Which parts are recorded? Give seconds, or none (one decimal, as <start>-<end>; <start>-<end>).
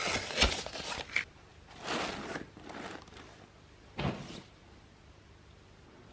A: 0.0-6.1